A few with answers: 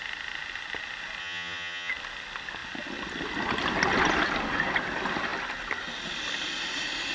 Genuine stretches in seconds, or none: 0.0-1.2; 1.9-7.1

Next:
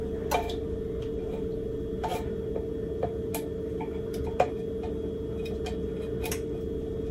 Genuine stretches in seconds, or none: 0.0-7.1

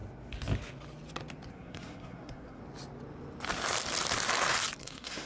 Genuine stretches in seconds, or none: 0.0-1.5; 2.6-4.8